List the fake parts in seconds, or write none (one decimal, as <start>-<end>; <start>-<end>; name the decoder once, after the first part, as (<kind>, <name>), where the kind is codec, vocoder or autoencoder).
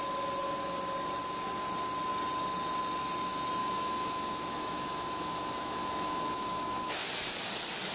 3.6-7.0 (autoencoder, DAC-VAE)